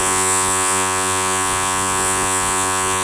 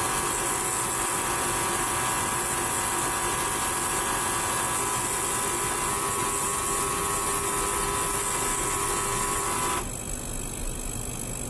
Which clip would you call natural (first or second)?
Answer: second